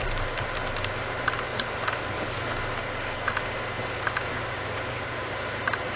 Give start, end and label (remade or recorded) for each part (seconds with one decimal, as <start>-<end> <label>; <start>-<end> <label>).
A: 0.0-4.3 recorded; 4.3-5.3 remade; 5.3-6.0 recorded